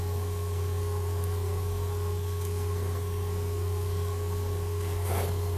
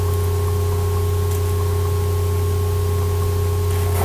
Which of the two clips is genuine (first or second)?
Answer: second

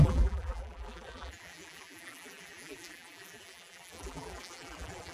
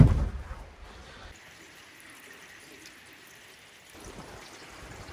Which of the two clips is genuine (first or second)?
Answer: second